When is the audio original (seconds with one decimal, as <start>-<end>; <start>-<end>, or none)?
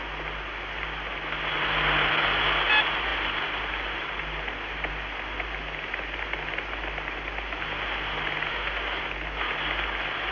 0.0-8.5; 9.0-10.3